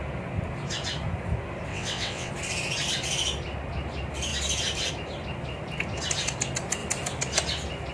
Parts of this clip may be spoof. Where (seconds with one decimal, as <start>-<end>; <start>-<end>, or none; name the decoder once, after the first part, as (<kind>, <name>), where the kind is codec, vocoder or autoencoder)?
1.7-2.3 (vocoder, WaveNeXt)